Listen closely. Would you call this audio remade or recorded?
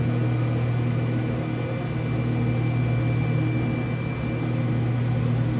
recorded